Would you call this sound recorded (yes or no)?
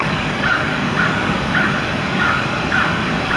no